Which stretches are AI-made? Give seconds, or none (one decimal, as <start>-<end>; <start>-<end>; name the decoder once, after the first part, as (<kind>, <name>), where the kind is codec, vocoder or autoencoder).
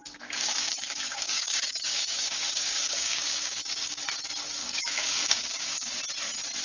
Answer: 0.0-4.0 (codec, DAC); 4.6-5.9